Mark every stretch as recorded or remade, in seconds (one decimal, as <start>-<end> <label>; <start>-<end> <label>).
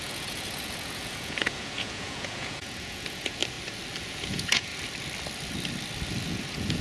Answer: 0.0-3.4 remade; 3.4-4.0 recorded; 4.0-4.7 remade; 4.7-6.2 recorded; 6.2-6.8 remade